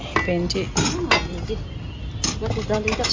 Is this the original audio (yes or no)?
yes